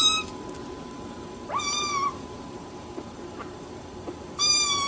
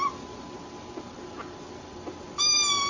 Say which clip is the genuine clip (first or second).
second